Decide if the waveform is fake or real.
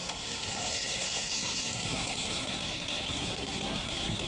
fake